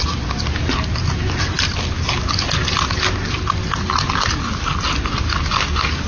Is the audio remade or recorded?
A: recorded